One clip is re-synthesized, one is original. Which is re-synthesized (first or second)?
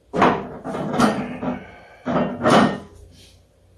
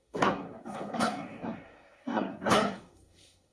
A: second